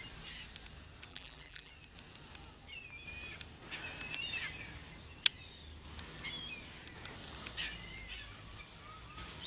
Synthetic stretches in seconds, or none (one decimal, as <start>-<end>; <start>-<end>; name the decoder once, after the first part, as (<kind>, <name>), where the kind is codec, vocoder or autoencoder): 1.1-1.7 (vocoder, BigVGAN v2)